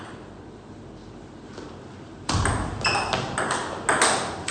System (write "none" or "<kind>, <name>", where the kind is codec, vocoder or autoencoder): none